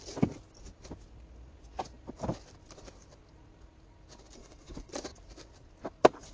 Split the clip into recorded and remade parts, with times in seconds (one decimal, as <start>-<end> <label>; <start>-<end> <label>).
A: 0.0-4.4 recorded; 4.4-4.9 remade; 4.9-6.3 recorded